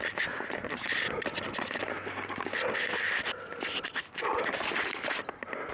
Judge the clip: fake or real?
real